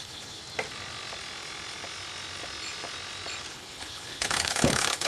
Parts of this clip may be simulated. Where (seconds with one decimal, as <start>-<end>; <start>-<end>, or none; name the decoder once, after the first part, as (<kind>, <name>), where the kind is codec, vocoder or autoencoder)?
0.0-0.4 (codec, HILCodec); 3.5-5.1